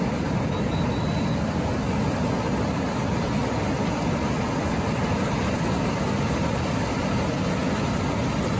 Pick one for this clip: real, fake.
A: real